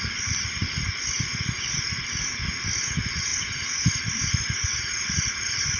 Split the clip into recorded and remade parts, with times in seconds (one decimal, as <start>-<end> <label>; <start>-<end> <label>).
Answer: 0.0-5.8 recorded